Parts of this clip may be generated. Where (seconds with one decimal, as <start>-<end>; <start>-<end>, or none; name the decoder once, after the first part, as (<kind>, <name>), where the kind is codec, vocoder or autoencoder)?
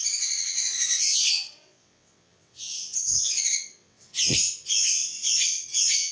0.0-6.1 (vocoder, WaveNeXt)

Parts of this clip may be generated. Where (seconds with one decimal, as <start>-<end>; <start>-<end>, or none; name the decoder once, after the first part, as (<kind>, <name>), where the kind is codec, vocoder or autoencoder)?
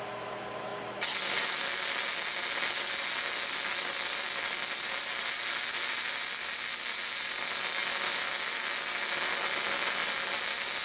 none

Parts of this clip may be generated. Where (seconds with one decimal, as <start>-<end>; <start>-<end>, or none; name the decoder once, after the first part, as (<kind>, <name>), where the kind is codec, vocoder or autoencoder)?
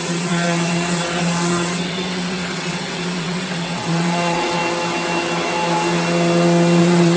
0.0-4.6 (vocoder, WaveNeXt); 6.8-7.2